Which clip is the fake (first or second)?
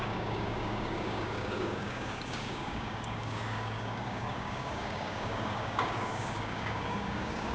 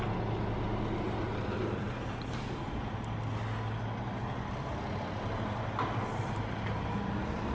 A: first